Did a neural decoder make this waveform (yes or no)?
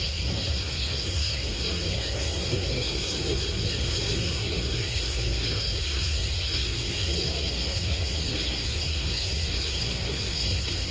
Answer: yes